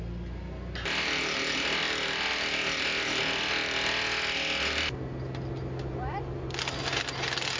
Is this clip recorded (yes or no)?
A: yes